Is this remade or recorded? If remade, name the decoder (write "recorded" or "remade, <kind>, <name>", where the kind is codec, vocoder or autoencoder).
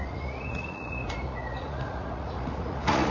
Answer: remade, vocoder, Vocos